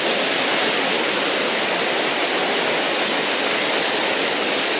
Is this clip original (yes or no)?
yes